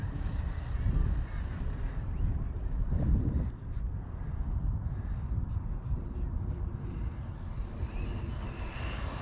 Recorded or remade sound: remade